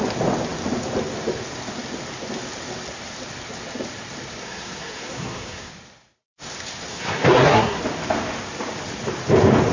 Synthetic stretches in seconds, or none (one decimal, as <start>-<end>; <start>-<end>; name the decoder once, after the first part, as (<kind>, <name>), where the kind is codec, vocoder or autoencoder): 4.4-5.7 (codec, SNAC); 6.9-7.8